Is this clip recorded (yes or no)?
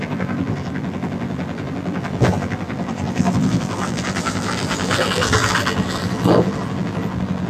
no